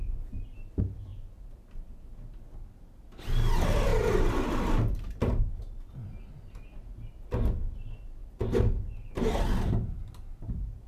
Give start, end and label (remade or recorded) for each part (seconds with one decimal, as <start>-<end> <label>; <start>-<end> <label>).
0.0-10.9 recorded